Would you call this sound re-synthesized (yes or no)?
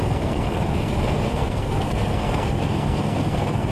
yes